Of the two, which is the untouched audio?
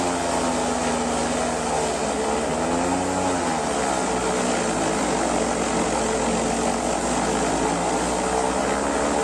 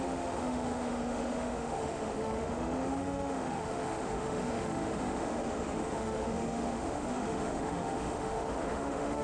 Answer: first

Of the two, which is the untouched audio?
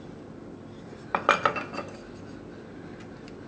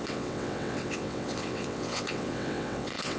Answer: first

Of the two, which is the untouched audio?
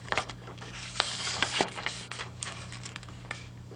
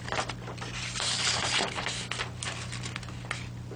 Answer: second